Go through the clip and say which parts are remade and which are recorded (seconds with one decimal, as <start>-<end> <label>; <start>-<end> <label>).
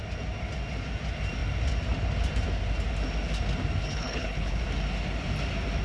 0.0-3.8 recorded; 3.8-4.6 remade; 4.6-5.8 recorded